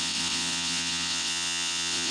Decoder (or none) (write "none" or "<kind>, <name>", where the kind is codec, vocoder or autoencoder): vocoder, WaveNeXt